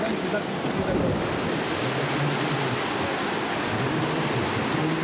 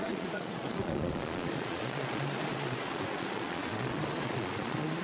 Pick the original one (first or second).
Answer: first